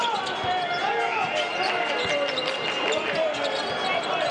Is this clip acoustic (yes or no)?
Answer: yes